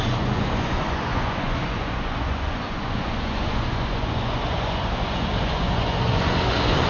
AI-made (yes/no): yes